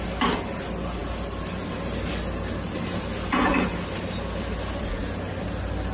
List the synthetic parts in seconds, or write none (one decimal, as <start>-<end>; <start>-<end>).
none